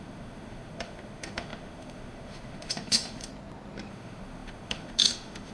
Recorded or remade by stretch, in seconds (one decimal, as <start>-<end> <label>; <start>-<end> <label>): 0.0-3.3 remade; 3.3-3.9 recorded; 3.9-5.5 remade